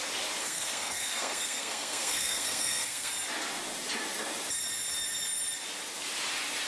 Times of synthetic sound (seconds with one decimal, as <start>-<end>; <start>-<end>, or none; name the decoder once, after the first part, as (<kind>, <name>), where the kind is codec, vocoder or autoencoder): 0.4-3.1 (codec, SNAC)